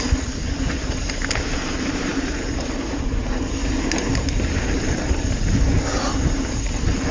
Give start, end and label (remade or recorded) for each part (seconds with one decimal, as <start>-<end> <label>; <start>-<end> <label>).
0.0-7.1 remade